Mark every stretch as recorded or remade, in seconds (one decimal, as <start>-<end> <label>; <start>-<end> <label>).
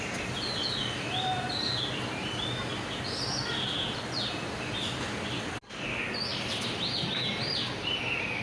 0.0-8.4 recorded